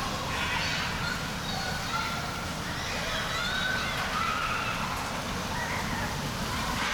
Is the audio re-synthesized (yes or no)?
no